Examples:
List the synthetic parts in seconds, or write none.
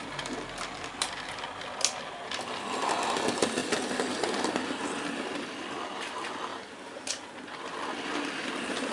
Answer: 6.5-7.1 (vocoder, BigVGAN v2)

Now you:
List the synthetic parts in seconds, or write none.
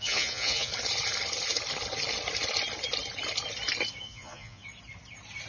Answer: 0.0-0.7 (vocoder, Vocos); 4.0-4.6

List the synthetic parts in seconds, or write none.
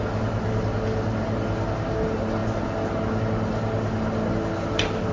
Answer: none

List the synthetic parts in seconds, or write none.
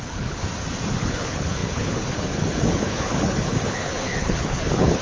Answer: 0.0-0.4 (codec, HILCodec); 0.9-5.0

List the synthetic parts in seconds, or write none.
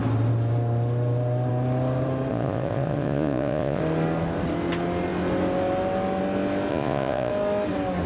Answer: 2.3-3.8 (vocoder, Vocos); 6.7-7.3